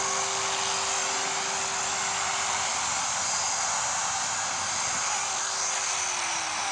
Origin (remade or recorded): recorded